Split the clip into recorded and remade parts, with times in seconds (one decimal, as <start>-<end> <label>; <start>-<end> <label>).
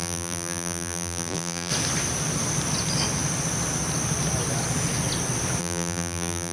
0.0-1.7 remade; 1.7-5.6 recorded; 5.6-6.5 remade